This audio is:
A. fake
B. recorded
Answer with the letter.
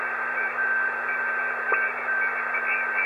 B